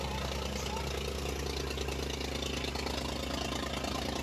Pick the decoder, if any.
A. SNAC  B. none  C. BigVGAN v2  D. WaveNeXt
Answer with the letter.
B